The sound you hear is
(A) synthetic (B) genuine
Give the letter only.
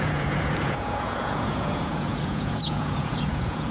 A